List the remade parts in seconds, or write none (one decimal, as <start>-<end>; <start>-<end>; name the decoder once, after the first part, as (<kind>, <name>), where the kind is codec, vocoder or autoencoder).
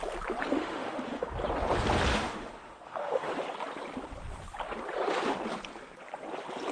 0.5-1.3 (autoencoder, DAC-VAE); 2.1-3.3